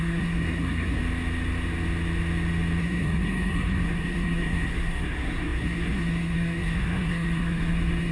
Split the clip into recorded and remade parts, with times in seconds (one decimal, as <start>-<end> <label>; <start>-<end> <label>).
0.0-1.0 remade; 1.0-2.8 recorded; 2.8-8.1 remade